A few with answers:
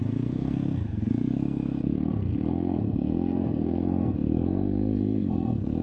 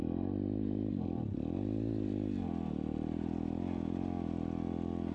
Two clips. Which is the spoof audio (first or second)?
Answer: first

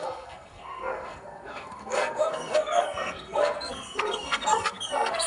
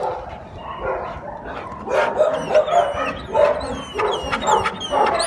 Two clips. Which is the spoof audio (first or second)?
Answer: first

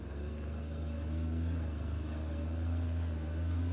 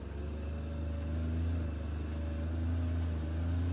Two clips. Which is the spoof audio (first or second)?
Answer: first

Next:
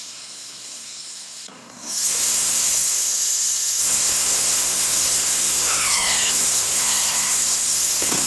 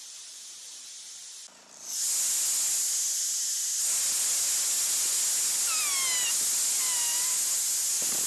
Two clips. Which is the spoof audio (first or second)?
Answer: first